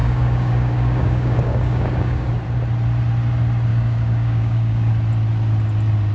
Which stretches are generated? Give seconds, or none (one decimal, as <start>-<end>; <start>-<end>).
0.0-2.3; 3.7-4.9